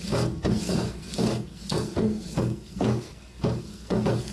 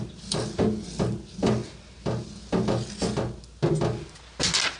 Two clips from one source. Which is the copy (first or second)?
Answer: first